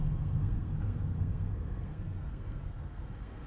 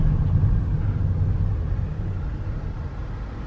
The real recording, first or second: second